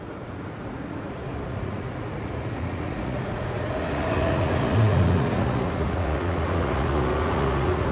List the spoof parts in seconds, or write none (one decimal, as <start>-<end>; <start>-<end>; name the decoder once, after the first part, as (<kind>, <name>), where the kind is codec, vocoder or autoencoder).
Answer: 0.0-7.9 (vocoder, Vocos)